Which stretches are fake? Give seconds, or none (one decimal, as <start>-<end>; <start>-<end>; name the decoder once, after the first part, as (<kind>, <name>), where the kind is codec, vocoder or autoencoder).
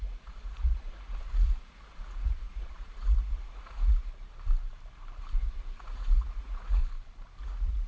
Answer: 0.0-4.1 (vocoder, Vocos); 5.4-6.8; 7.4-7.9